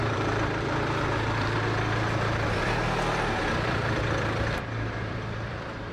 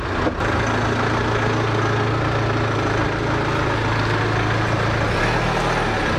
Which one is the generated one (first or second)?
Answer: first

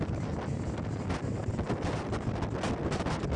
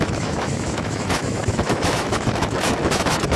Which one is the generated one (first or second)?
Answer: second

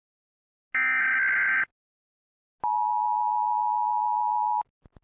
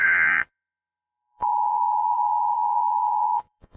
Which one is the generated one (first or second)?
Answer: second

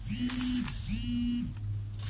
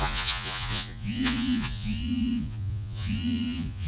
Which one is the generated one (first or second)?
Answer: second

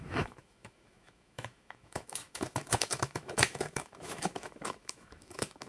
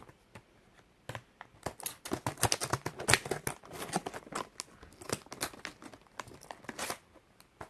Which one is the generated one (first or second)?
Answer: first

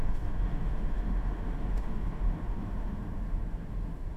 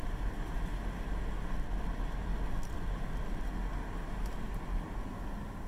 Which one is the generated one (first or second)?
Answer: first